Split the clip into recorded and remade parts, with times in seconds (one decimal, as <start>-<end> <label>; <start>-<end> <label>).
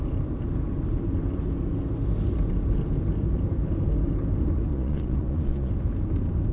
0.0-4.7 recorded; 4.7-5.7 remade; 5.7-6.5 recorded